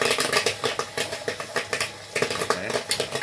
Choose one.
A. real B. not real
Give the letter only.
A